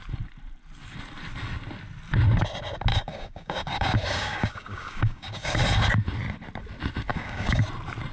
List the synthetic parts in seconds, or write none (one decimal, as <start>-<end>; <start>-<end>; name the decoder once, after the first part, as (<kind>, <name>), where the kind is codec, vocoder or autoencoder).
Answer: 2.9-5.6 (codec, DAC); 7.1-7.6